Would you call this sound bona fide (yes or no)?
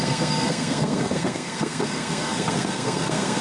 no